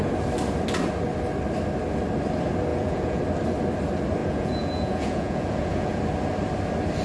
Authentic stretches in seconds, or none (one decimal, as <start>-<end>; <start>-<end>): 0.0-2.7; 3.2-4.2; 6.0-7.0